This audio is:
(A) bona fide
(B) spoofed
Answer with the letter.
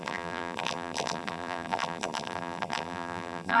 B